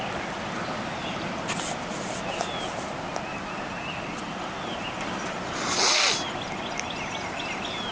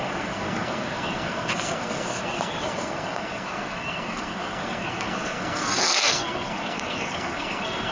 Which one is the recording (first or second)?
first